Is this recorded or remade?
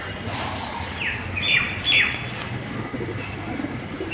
recorded